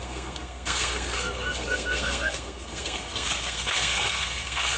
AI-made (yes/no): yes